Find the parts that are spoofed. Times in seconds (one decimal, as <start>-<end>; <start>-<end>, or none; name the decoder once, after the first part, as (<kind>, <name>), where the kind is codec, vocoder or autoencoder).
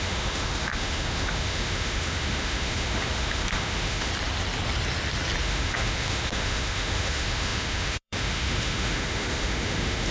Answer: 0.0-4.1 (autoencoder, DAC-VAE); 5.4-10.1